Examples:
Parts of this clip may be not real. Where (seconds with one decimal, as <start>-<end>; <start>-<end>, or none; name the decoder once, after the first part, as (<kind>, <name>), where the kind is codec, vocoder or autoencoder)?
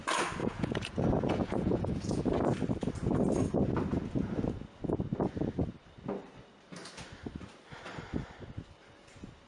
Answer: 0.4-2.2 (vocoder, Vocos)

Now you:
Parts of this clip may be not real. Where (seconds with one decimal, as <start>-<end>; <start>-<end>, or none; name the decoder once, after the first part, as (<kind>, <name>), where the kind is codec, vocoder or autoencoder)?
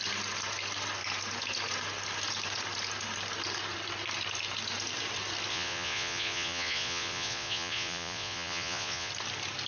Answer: 5.5-9.1 (vocoder, Vocos)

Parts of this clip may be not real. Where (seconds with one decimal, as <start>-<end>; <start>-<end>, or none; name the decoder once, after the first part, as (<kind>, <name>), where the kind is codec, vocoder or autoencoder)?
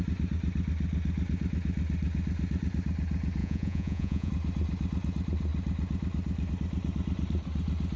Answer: 3.4-4.3 (vocoder, Vocos)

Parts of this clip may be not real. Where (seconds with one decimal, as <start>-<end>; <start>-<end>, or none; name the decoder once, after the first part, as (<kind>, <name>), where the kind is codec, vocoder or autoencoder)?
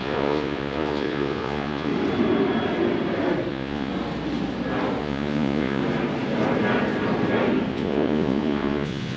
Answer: 0.0-1.9 (vocoder, Vocos); 3.5-3.9; 5.0-5.8; 7.7-9.2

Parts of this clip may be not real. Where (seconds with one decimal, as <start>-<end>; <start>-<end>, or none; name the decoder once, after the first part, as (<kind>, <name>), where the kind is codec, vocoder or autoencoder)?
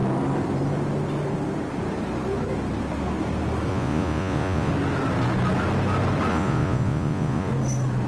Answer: 3.7-4.7 (vocoder, Vocos); 6.3-7.5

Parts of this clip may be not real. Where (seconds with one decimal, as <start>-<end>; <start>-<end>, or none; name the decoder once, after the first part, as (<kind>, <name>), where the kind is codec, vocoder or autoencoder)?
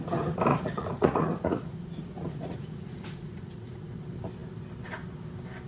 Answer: 0.5-3.9 (vocoder, Vocos)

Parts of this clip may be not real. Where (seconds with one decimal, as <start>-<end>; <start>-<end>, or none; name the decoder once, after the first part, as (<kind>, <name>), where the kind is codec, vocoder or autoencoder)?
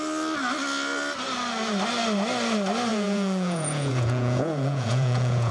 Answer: 2.9-5.5 (vocoder, Vocos)